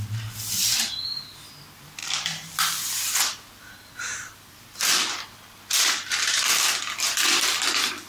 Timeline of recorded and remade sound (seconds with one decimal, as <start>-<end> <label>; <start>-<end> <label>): 0.0-4.9 remade; 4.9-8.1 recorded